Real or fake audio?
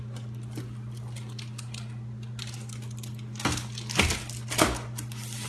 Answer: real